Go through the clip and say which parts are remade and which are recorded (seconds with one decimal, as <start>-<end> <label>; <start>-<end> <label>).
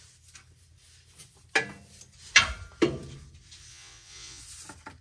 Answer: 0.0-3.7 recorded; 3.7-4.4 remade; 4.4-5.0 recorded